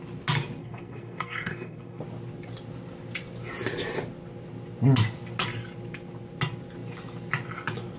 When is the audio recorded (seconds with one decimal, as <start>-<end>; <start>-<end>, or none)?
0.0-0.6; 2.0-8.0